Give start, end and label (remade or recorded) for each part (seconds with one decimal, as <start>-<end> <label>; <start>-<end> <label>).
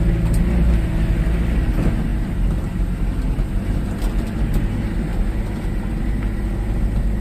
0.0-7.2 recorded